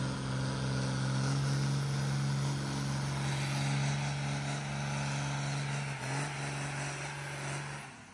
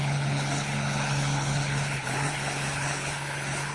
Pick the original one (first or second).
first